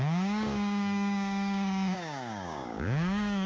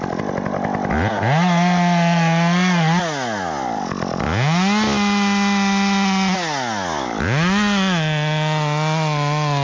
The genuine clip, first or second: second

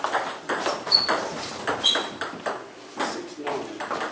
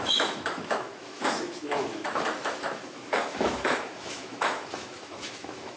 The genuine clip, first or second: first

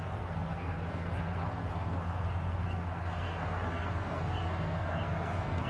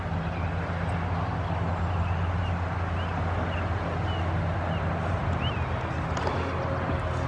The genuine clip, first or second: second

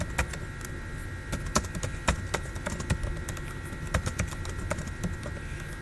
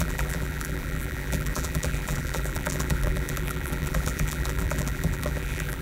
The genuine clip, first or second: first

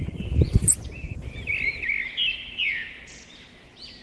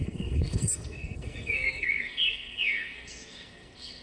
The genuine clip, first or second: first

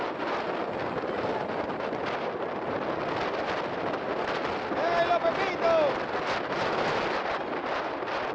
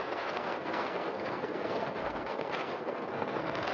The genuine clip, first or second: first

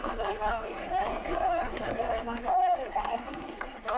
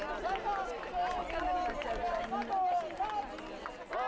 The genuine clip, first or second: second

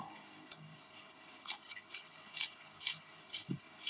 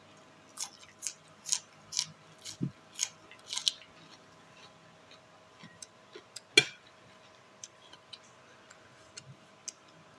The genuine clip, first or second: second